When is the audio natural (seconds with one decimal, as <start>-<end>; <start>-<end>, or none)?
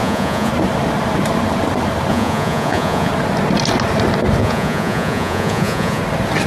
0.5-2.1; 3.1-4.4; 6.0-6.5